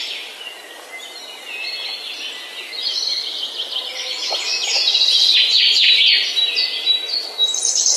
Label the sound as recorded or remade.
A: recorded